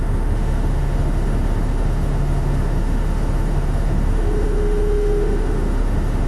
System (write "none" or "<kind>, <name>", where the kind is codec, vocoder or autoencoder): autoencoder, DAC-VAE